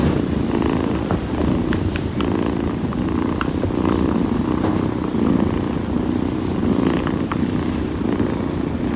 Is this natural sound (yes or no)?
yes